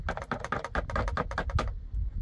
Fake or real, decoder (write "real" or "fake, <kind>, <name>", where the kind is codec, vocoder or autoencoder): real